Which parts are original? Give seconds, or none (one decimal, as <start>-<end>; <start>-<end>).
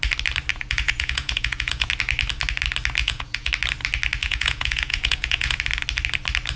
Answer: 0.0-0.5; 1.9-3.0; 3.5-4.2; 5.6-6.6